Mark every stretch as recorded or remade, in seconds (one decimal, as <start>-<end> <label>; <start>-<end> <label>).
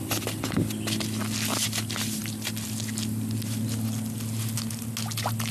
0.0-5.5 recorded